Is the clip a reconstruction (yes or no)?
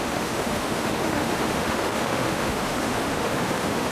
yes